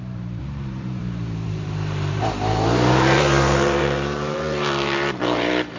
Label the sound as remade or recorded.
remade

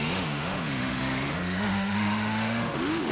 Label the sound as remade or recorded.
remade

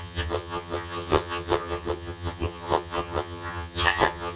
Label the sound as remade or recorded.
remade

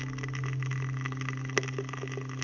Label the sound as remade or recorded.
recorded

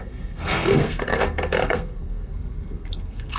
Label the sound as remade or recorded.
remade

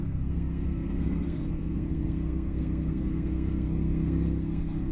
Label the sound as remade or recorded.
remade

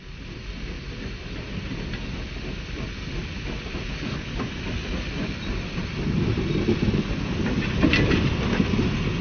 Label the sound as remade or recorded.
recorded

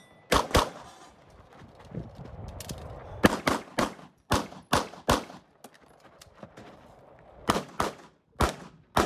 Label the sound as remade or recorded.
recorded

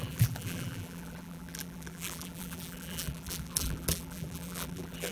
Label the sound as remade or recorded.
remade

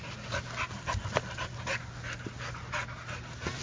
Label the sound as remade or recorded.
recorded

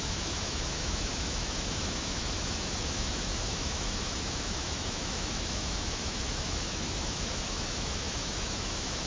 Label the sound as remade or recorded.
remade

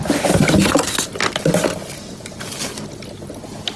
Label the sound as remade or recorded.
recorded